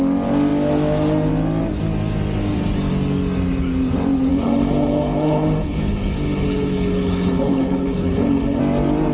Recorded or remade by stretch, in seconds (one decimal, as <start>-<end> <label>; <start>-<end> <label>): 0.0-4.3 recorded; 4.3-8.6 remade; 8.6-9.1 recorded